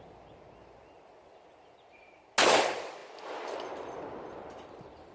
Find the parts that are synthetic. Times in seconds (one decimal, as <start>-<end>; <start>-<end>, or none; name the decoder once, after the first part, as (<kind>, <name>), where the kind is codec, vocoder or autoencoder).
none